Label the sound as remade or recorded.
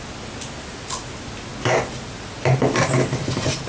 recorded